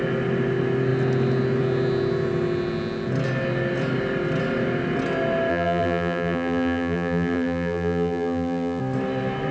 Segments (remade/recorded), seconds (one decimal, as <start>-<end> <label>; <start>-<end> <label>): 0.0-5.5 recorded; 5.5-8.8 remade; 8.8-9.5 recorded